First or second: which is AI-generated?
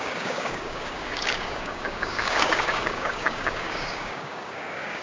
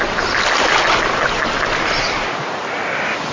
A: first